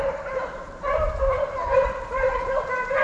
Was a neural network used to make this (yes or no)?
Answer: yes